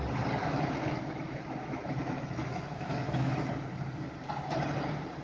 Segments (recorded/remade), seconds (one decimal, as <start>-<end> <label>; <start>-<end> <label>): 0.0-0.4 recorded; 0.4-3.5 remade; 3.5-5.2 recorded